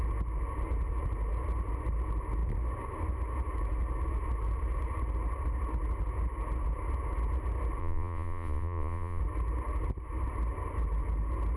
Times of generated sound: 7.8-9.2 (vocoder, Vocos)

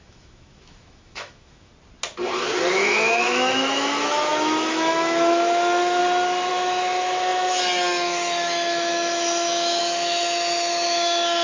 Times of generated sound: 0.0-1.7 (autoencoder, DAC-VAE); 2.7-6.0; 6.5-11.4

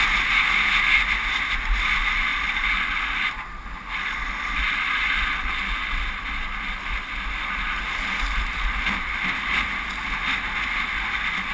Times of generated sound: none

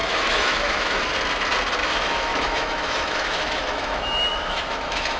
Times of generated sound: 0.0-1.0 (autoencoder, DAC-VAE); 1.8-5.2

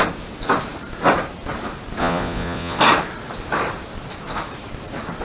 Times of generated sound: 2.0-2.8 (vocoder, Vocos)

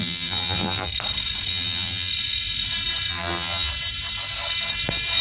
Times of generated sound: 0.0-0.9 (vocoder, BigVGAN v2); 1.5-2.1; 3.1-3.7

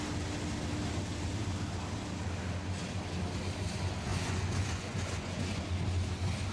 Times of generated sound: 4.1-5.6 (vocoder, Vocos)

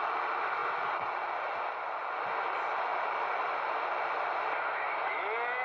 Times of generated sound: none